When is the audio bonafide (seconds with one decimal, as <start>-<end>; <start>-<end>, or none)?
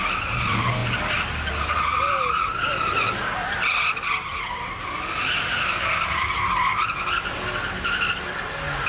0.0-8.9